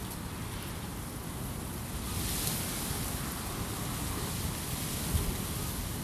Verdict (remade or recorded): recorded